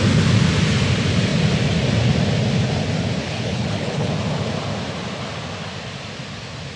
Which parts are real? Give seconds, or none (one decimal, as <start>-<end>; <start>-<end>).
0.0-3.2; 4.1-6.8